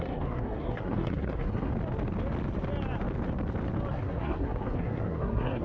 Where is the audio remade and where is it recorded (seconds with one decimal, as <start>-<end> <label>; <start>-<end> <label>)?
0.0-1.7 remade; 1.7-3.9 recorded; 3.9-5.6 remade